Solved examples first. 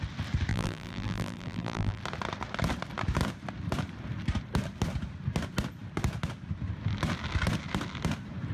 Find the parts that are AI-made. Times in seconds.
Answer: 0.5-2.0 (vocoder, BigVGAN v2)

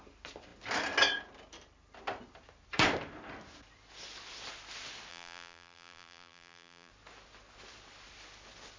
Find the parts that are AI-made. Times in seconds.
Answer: 5.1-6.9 (vocoder, BigVGAN v2)

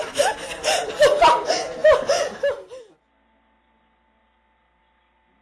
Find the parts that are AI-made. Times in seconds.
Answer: none